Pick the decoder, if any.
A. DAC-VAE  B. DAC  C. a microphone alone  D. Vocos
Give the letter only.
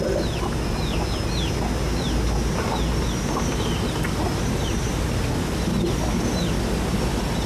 C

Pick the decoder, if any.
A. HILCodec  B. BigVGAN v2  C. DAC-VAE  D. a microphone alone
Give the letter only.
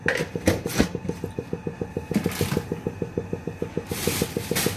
D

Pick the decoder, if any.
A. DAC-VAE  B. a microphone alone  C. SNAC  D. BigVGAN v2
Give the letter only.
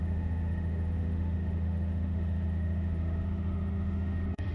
A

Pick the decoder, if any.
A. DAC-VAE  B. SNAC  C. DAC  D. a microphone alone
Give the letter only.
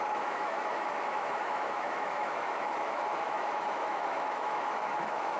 A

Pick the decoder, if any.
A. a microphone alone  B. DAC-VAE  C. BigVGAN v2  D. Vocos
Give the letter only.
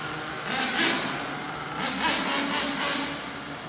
A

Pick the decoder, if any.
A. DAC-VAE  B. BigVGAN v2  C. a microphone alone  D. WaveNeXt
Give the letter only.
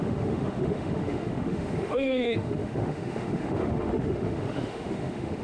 A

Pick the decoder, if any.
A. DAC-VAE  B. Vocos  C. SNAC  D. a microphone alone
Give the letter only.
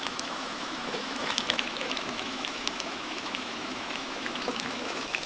A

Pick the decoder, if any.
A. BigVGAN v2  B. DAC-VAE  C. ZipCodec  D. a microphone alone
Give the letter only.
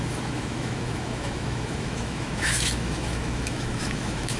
B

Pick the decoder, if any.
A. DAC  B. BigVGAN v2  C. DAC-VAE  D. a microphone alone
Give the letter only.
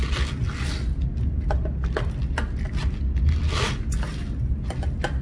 D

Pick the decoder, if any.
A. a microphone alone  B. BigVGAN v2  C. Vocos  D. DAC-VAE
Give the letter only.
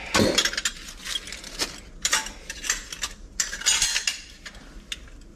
A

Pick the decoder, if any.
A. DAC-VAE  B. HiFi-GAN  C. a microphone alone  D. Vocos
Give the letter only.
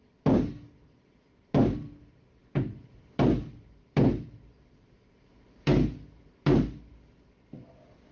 C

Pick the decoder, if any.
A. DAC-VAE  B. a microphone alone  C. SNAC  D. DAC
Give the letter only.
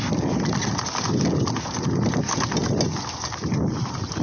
B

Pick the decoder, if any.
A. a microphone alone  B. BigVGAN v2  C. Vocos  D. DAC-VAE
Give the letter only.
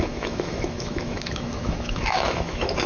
D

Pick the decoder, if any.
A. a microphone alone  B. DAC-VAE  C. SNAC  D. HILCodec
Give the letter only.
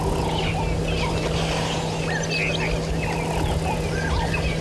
A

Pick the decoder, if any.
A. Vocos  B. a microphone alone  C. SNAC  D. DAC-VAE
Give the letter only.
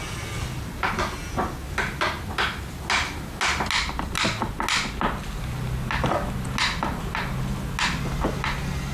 B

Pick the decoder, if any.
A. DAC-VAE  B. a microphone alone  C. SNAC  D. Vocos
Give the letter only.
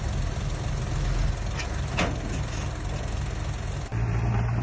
B